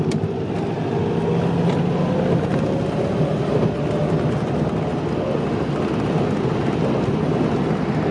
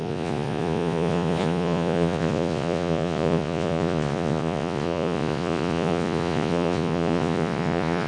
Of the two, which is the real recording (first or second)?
first